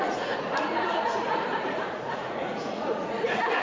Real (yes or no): no